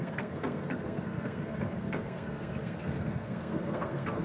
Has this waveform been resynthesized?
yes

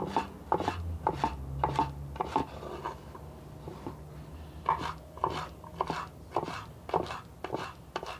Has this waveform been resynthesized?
no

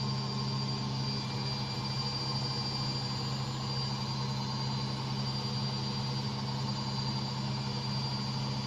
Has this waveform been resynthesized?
no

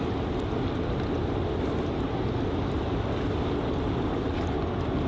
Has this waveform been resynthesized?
no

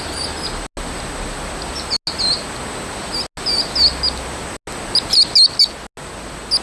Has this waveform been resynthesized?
no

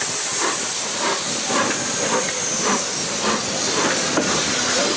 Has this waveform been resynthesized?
no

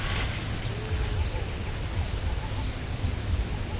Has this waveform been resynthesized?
no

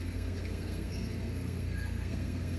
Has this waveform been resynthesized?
yes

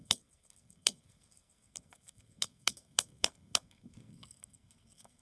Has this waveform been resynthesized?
yes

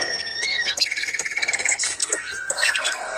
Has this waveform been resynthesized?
yes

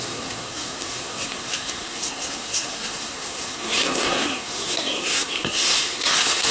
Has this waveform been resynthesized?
yes